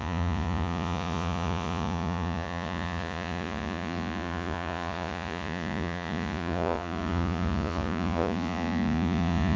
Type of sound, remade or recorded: remade